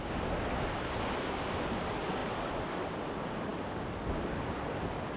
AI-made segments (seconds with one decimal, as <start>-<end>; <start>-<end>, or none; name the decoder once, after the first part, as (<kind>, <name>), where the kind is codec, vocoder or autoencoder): none